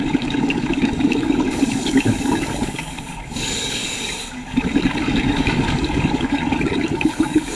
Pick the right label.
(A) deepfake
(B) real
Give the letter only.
A